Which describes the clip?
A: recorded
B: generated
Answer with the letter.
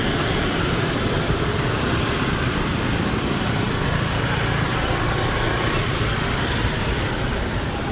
B